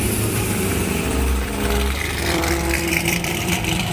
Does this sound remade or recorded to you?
remade